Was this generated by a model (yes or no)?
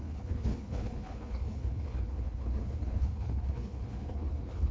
yes